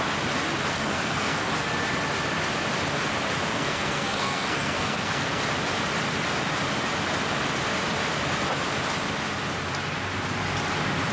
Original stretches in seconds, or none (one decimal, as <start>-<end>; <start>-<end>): 0.0-0.7; 1.5-3.5; 5.4-11.1